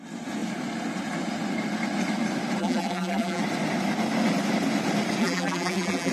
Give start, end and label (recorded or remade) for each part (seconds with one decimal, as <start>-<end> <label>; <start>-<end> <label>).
0.0-2.6 recorded; 2.6-3.4 remade; 3.4-5.2 recorded; 5.2-6.1 remade